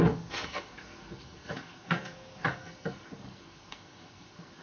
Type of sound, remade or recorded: remade